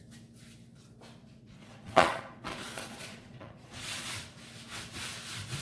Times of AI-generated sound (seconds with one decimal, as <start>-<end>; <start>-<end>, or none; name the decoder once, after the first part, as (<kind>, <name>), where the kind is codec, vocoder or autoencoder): 1.2-4.1 (vocoder, Vocos)